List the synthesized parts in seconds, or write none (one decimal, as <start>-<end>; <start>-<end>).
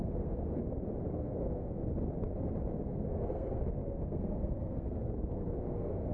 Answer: 0.0-0.6; 1.1-1.8; 2.8-6.1